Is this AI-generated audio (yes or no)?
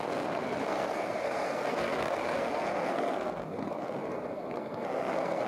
yes